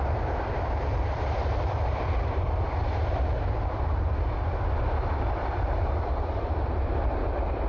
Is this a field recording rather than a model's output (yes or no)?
no